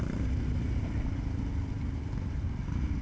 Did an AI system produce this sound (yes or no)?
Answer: no